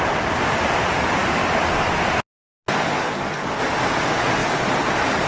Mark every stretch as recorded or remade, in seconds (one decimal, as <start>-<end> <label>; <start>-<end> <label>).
0.0-4.4 recorded; 4.4-5.3 remade